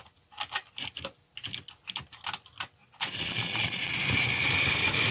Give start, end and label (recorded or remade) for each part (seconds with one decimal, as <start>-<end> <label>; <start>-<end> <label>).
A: 0.0-2.8 recorded; 2.8-3.9 remade; 3.9-5.1 recorded